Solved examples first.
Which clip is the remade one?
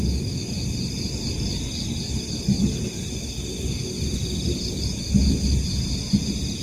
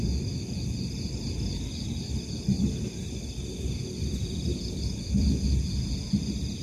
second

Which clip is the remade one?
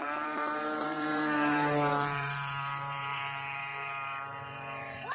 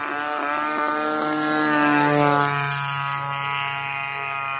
first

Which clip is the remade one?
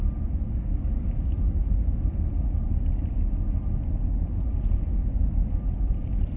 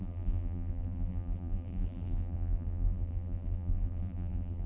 second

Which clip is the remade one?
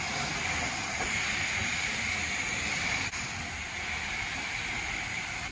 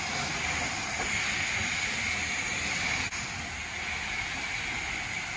first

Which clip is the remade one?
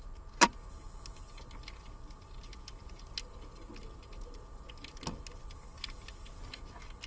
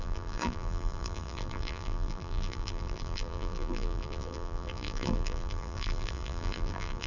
second